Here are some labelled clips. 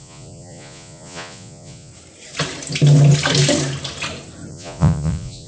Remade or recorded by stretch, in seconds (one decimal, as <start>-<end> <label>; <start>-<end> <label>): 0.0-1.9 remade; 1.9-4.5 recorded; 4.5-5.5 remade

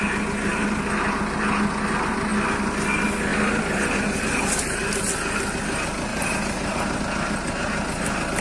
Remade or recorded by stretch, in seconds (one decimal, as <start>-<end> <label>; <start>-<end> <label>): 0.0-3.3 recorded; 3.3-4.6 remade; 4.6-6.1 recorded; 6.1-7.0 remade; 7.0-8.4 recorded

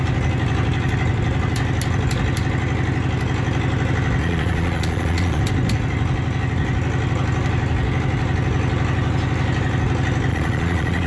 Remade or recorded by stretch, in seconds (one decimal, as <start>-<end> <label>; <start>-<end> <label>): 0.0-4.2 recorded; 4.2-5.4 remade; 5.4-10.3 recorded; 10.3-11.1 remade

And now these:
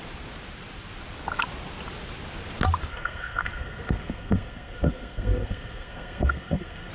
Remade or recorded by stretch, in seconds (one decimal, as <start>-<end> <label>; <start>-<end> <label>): 0.0-2.9 recorded; 2.9-6.9 remade

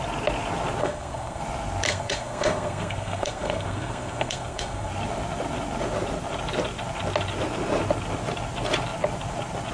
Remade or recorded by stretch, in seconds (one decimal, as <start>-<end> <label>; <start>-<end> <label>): 0.0-0.8 recorded; 0.8-1.4 remade; 1.4-1.9 recorded; 1.9-4.9 remade; 4.9-9.7 recorded

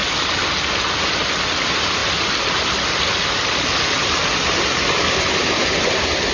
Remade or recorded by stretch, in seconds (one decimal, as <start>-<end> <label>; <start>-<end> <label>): 0.0-6.3 recorded

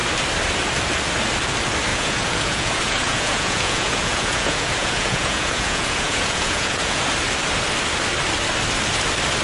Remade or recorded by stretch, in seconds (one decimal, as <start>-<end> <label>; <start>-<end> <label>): 0.0-1.9 recorded; 1.9-7.0 remade; 7.0-9.4 recorded

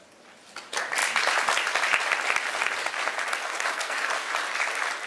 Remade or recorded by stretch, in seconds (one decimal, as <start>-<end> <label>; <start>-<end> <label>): 0.0-3.4 recorded; 3.4-4.3 remade; 4.3-5.1 recorded